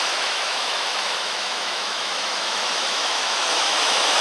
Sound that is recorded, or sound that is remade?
remade